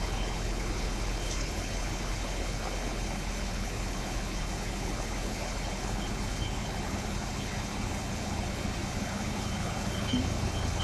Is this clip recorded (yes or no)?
no